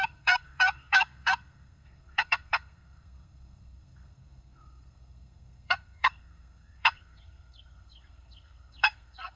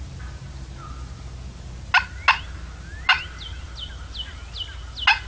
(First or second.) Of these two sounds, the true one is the second